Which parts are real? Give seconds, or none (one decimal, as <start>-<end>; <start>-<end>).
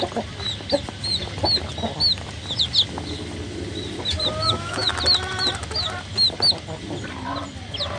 0.0-4.4; 4.9-8.0